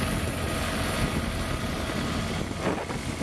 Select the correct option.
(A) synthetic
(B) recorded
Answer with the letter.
B